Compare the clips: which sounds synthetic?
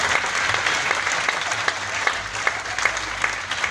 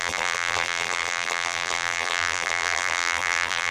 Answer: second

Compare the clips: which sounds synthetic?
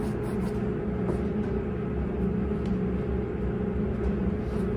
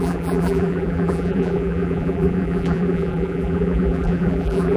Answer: second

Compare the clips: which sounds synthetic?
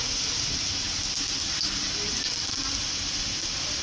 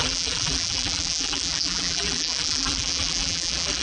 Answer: second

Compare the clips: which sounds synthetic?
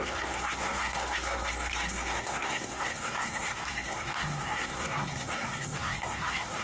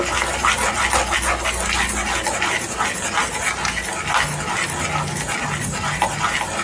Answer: first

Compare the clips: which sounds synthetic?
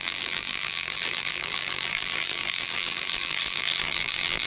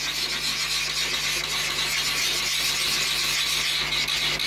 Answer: first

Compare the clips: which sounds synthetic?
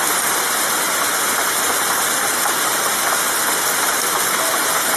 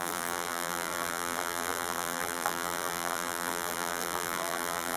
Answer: second